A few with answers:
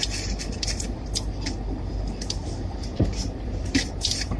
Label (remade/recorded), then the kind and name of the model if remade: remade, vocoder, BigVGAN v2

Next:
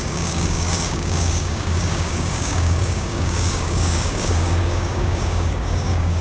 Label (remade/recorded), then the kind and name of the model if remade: remade, codec, DAC